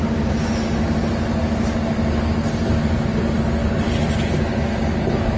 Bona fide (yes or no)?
yes